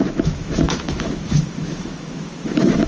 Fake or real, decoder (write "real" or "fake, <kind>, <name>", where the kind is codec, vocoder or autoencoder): fake, autoencoder, DAC-VAE